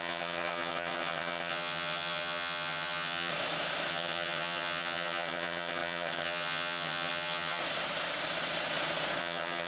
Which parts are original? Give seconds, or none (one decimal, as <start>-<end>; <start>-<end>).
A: 3.3-3.9; 7.6-9.2